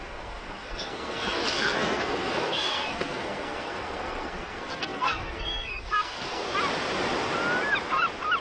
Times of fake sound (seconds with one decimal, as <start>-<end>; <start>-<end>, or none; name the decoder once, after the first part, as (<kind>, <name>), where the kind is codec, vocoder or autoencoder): 0.0-6.4 (codec, SNAC)